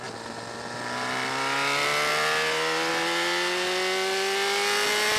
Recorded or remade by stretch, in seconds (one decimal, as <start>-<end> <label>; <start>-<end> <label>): 0.0-5.2 recorded